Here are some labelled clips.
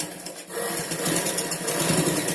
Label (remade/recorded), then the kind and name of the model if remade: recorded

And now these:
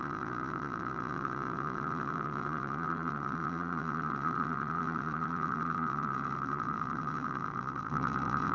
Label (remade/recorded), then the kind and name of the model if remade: remade, vocoder, Vocos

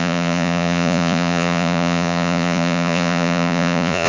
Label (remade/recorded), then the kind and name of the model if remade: remade, vocoder, Vocos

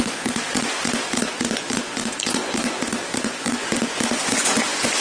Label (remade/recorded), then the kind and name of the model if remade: remade, vocoder, Vocos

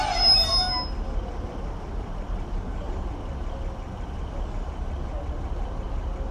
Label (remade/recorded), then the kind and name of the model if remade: recorded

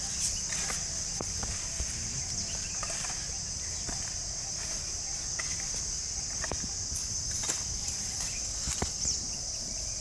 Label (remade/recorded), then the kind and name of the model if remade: recorded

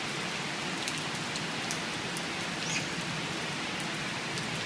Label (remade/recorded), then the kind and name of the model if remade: recorded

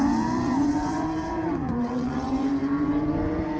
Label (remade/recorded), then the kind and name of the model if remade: remade, vocoder, Vocos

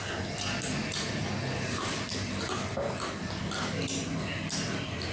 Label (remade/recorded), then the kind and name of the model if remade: recorded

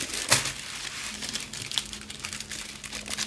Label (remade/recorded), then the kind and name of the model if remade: recorded